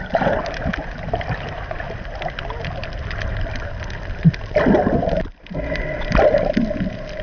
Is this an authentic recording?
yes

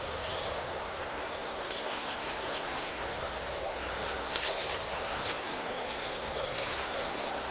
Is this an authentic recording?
no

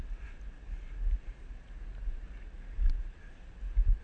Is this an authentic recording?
yes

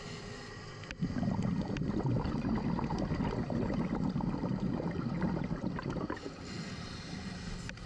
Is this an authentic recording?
yes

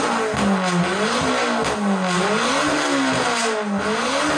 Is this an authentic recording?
yes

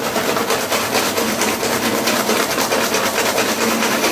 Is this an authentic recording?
yes